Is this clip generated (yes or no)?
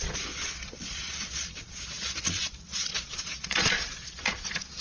yes